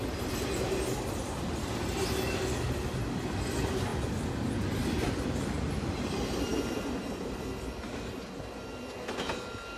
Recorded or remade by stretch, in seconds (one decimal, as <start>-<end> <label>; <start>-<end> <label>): 0.0-9.8 recorded